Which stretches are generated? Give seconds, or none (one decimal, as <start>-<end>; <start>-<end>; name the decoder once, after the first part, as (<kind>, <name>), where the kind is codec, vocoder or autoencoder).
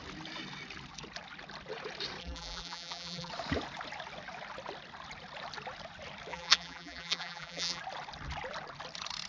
2.2-3.3 (vocoder, BigVGAN v2); 6.3-7.8